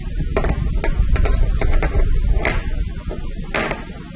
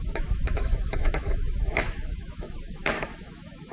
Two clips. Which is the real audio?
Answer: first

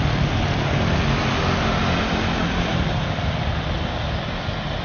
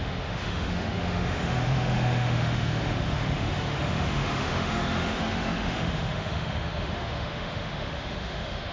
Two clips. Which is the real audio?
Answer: first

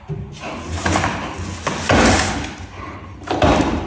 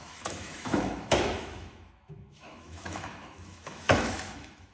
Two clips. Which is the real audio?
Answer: first